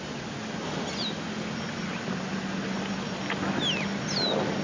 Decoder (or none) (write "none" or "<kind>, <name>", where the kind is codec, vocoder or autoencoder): none